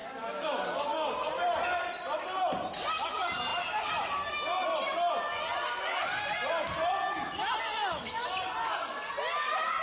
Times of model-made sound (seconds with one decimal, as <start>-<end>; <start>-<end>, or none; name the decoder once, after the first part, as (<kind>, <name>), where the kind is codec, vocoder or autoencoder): 0.0-1.1 (codec, DAC); 8.6-9.1